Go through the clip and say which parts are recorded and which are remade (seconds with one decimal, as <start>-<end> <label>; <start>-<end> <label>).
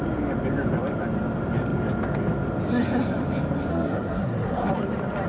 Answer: 0.0-3.7 recorded; 3.7-4.7 remade; 4.7-5.3 recorded